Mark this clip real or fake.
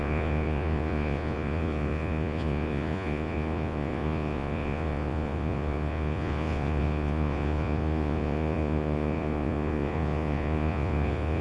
fake